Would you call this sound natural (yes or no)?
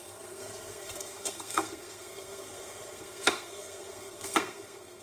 no